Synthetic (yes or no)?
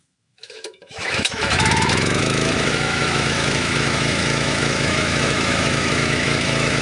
yes